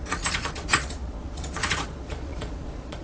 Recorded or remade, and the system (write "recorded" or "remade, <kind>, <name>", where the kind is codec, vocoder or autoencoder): remade, vocoder, Vocos